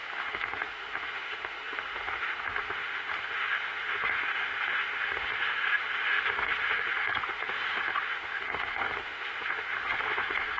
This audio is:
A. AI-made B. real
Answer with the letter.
A